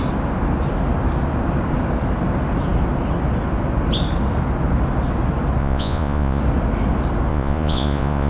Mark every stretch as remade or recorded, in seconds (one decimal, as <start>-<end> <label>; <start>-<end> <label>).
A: 0.0-5.6 recorded; 5.6-6.4 remade; 6.4-7.3 recorded; 7.3-8.3 remade